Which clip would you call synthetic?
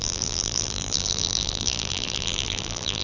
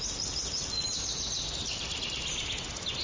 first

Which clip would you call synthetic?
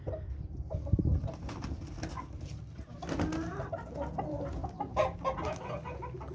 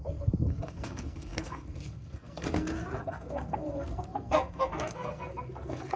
second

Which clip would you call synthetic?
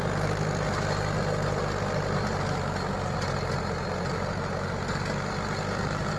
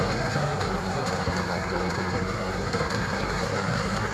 second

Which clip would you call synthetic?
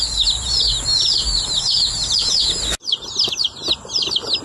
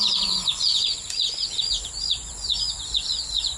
second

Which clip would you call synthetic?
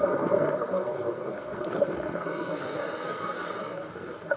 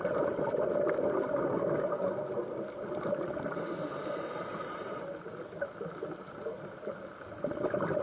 first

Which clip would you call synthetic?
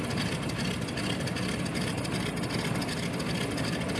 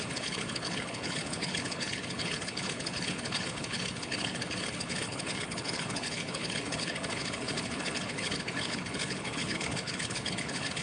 second